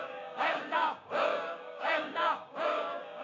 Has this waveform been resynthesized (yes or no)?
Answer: yes